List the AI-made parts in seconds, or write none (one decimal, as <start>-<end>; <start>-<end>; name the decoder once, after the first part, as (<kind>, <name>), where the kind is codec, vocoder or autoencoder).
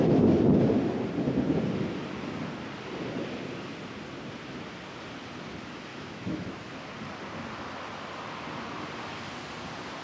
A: 5.9-6.7 (autoencoder, DAC-VAE)